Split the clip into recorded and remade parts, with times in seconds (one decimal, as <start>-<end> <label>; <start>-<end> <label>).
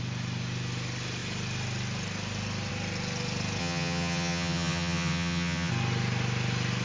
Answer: 0.0-3.6 recorded; 3.6-5.7 remade; 5.7-6.8 recorded